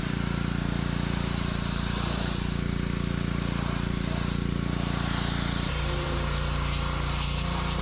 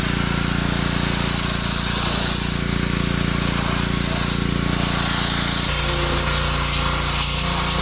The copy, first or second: first